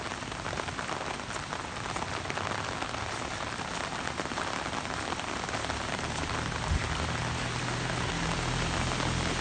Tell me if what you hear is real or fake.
real